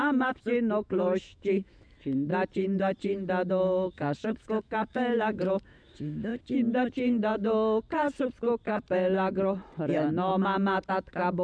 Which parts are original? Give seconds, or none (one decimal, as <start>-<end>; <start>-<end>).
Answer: 2.3-3.5; 6.3-9.8; 10.3-10.9